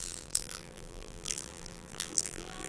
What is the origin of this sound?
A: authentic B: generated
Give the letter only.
B